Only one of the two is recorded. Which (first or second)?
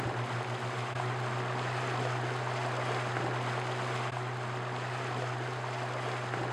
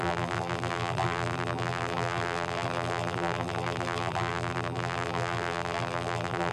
first